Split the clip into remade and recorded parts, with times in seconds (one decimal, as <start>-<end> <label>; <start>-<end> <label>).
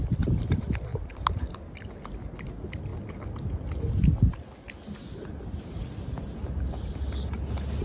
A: 0.0-7.8 recorded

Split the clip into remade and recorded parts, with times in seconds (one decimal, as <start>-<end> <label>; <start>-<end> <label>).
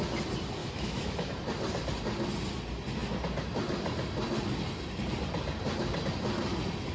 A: 0.0-0.6 recorded; 0.6-1.3 remade; 1.3-6.9 recorded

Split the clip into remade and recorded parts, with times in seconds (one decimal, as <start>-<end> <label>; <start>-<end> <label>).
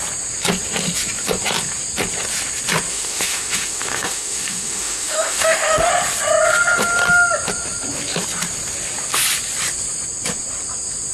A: 0.0-2.9 recorded; 2.9-5.9 remade; 5.9-11.1 recorded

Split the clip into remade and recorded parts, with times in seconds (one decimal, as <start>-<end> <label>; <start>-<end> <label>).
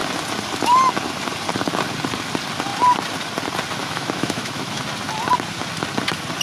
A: 0.0-3.8 recorded; 3.8-4.8 remade; 4.8-6.4 recorded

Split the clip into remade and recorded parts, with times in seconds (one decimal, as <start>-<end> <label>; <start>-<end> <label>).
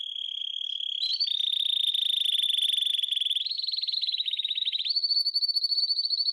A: 0.0-3.5 recorded; 3.5-4.8 remade; 4.8-5.2 recorded; 5.2-5.8 remade; 5.8-6.3 recorded